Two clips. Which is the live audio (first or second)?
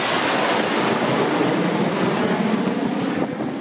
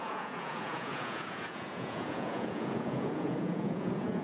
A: first